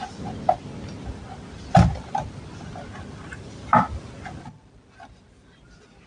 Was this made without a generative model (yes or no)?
yes